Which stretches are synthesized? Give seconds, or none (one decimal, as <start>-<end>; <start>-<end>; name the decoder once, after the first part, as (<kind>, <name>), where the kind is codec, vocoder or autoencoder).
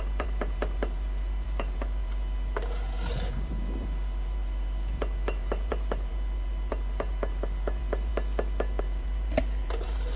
0.0-8.1 (vocoder, BigVGAN v2); 8.8-10.2